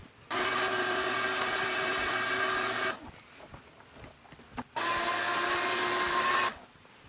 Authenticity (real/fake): real